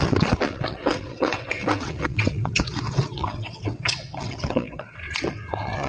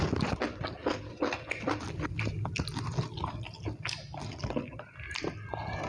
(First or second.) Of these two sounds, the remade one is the first